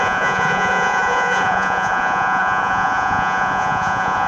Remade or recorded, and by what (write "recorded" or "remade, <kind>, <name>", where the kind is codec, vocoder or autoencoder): remade, vocoder, Vocos